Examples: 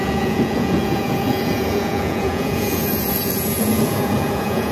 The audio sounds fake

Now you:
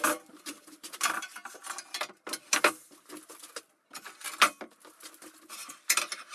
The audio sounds real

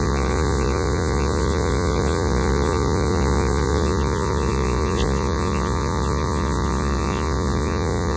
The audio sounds fake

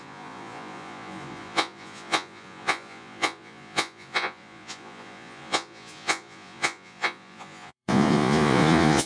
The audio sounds fake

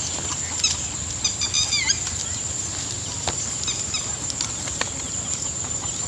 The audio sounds real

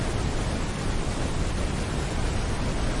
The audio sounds real